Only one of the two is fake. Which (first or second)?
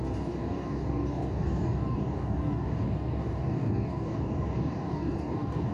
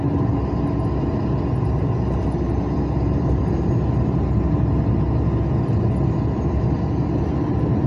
first